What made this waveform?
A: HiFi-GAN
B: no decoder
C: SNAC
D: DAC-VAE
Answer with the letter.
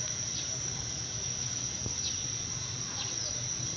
B